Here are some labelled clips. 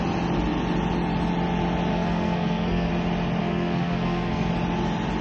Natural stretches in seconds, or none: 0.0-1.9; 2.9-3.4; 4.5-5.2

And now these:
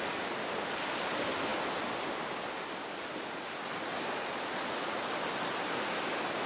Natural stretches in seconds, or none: 0.0-6.5

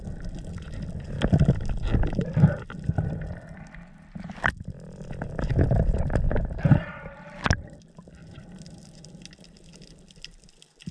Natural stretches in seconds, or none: 0.0-10.9

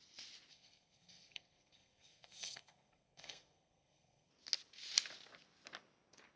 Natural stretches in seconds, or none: 0.0-0.5; 4.3-6.4